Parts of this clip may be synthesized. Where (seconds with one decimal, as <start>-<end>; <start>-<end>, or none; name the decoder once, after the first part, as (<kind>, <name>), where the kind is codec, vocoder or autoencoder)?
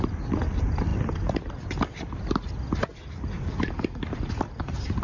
0.9-2.5 (vocoder, BigVGAN v2); 2.9-3.7